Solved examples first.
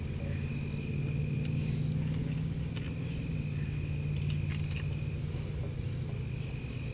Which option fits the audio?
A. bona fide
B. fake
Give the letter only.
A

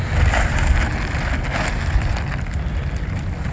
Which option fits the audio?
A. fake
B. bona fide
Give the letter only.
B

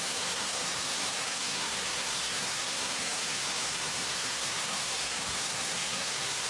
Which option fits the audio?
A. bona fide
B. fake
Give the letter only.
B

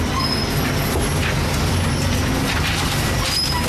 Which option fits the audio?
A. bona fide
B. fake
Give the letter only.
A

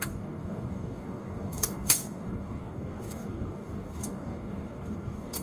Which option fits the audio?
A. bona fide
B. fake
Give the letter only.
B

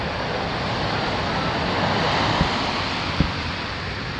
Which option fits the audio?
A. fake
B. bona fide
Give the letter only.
B